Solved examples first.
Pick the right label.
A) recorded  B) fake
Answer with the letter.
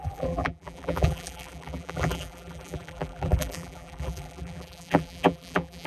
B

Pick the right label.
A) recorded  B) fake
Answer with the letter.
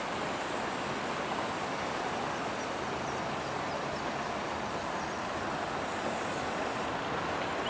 A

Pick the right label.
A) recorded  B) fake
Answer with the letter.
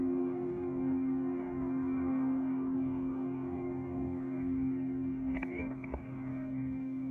B